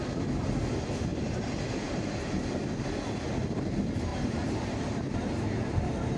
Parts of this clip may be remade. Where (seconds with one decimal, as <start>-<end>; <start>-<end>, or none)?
1.1-3.2; 4.1-6.2